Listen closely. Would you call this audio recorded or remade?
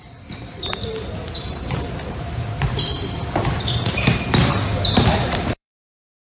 remade